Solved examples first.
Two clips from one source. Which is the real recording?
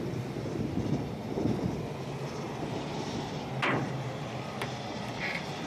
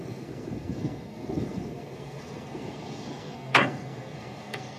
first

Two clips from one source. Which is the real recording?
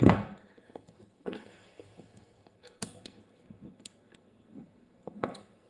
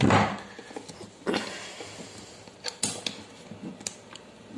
second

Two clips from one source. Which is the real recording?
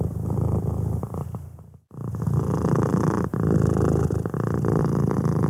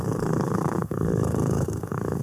first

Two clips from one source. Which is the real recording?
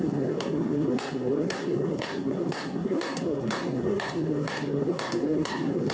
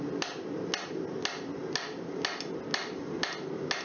second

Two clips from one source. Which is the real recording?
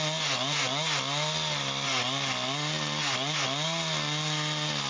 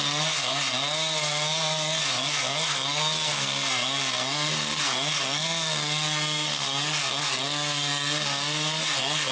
first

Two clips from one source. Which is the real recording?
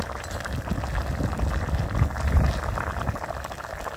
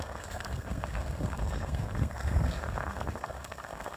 first